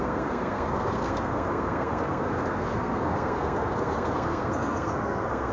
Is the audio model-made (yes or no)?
yes